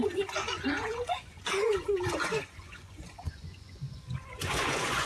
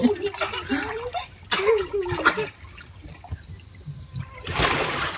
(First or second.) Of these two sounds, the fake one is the first